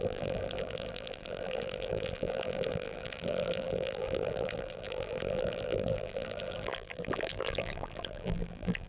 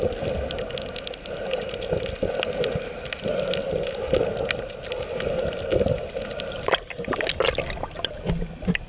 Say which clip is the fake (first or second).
first